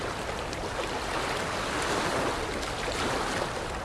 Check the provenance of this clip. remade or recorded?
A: recorded